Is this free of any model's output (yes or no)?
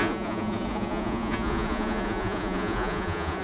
no